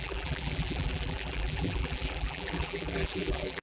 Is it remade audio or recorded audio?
remade